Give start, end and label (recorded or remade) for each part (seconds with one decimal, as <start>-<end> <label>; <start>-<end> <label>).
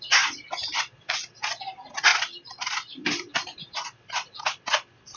0.0-2.1 recorded; 2.1-3.3 remade; 3.3-5.2 recorded